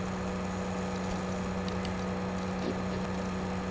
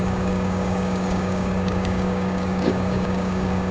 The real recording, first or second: first